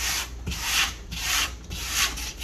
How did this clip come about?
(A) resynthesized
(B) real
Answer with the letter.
A